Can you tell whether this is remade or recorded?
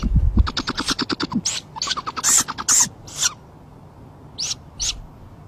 recorded